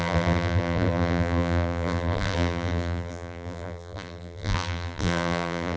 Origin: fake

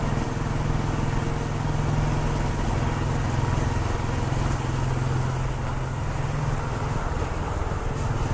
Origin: real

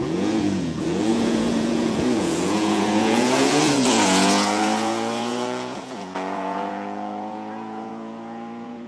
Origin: fake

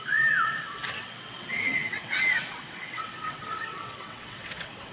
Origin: fake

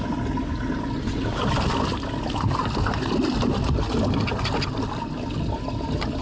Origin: real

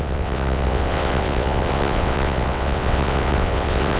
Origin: fake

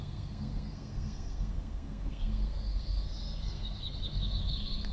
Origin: fake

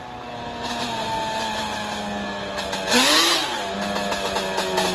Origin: real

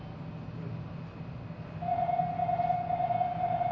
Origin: real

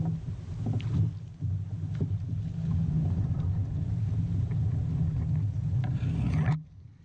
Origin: real